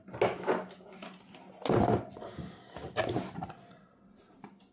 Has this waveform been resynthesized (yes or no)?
no